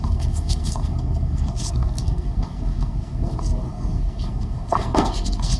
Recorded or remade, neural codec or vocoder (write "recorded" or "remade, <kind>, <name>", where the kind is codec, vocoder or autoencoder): remade, codec, SNAC